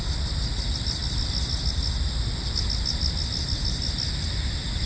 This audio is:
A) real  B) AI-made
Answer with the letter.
A